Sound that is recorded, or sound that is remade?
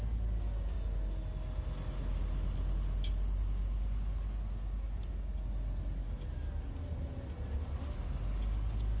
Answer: recorded